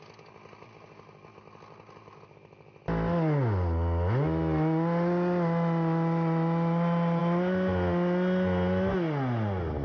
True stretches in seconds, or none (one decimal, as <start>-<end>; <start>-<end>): 0.0-9.8